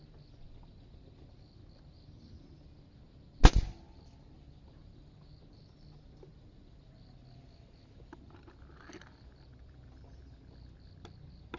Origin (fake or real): real